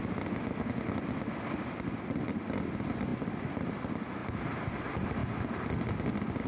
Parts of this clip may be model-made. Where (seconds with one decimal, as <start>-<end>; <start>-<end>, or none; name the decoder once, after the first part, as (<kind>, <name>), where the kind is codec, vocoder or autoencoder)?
none